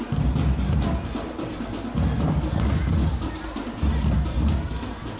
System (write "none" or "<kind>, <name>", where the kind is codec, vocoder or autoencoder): none